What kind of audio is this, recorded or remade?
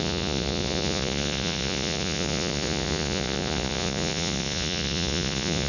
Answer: remade